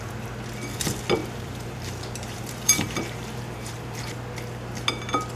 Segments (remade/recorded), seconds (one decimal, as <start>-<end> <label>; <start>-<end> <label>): 0.0-1.2 recorded; 1.2-4.0 remade; 4.0-5.4 recorded

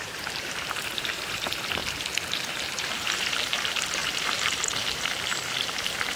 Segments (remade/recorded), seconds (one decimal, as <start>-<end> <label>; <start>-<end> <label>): 0.0-6.2 remade

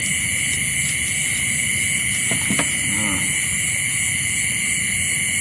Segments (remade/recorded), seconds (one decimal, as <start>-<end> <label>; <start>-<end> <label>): 0.0-5.4 recorded

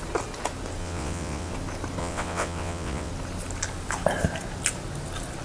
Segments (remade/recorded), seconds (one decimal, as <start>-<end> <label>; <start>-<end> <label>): 0.0-0.8 recorded; 0.8-1.5 remade; 1.5-2.0 recorded; 2.0-3.1 remade; 3.1-5.4 recorded

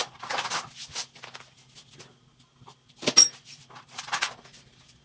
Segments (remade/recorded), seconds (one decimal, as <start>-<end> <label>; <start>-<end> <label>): 0.0-5.0 recorded

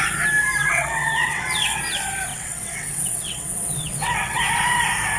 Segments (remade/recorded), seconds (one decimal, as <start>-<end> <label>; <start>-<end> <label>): 0.0-0.6 recorded; 0.6-1.8 remade; 1.8-2.3 recorded; 2.3-4.4 remade; 4.4-5.2 recorded

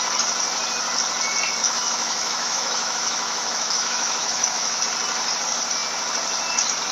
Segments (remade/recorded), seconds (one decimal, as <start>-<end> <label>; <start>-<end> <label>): 0.0-1.6 recorded; 1.6-4.8 remade; 4.8-6.9 recorded